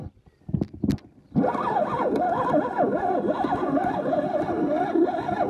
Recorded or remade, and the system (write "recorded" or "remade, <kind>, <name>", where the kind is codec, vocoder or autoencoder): recorded